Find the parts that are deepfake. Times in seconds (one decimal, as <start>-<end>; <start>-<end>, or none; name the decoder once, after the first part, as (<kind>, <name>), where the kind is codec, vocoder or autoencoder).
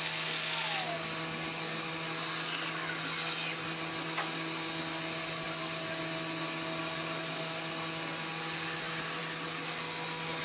none